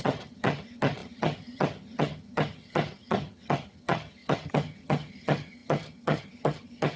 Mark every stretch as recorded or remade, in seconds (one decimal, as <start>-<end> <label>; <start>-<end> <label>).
0.0-7.0 remade